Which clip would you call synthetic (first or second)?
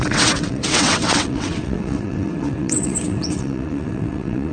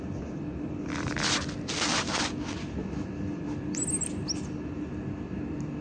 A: first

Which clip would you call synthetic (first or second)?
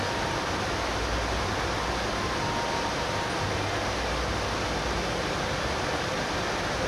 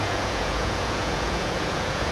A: second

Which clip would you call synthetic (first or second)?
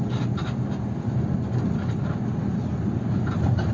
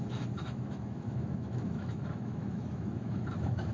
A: second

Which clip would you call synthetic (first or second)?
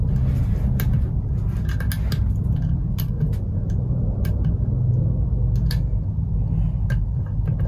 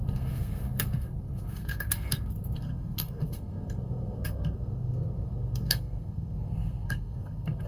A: second